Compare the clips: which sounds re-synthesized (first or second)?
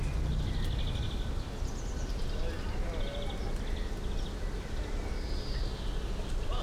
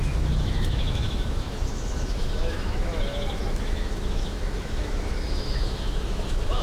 second